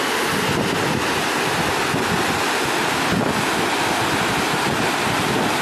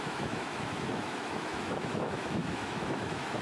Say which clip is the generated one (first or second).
second